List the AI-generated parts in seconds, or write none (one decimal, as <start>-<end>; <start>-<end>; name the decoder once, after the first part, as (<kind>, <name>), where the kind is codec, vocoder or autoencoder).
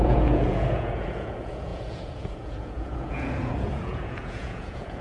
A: 0.0-5.0 (vocoder, Vocos)